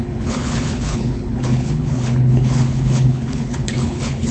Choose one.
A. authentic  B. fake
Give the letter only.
B